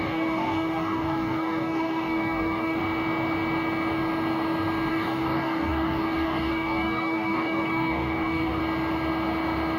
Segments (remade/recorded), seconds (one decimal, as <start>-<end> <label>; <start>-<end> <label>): 0.0-2.8 remade; 2.8-4.9 recorded; 4.9-8.6 remade; 8.6-9.8 recorded